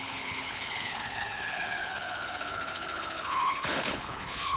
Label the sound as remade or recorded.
remade